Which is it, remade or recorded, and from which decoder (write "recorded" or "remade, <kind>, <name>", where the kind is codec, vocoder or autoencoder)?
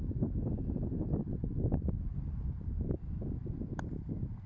recorded